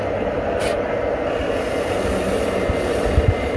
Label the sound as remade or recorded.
recorded